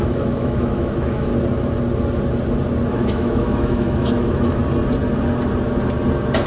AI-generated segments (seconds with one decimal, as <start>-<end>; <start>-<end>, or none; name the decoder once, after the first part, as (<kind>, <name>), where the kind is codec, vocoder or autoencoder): 0.0-1.3 (autoencoder, DAC-VAE); 2.9-4.6